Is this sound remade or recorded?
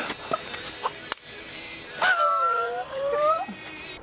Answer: remade